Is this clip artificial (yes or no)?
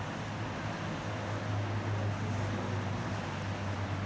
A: no